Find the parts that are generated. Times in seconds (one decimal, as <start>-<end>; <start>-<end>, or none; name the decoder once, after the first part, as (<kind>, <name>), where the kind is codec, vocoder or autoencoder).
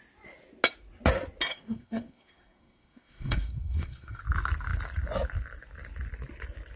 1.5-4.2 (codec, SNAC)